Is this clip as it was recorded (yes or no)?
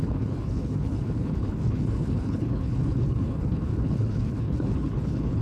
no